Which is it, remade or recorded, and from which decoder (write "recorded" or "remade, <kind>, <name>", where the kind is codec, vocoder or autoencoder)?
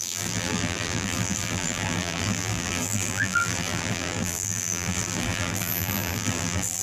remade, vocoder, BigVGAN v2